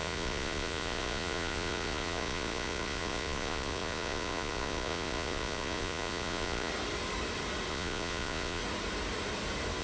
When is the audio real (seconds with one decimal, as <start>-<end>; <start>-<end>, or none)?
6.7-7.7; 8.6-9.8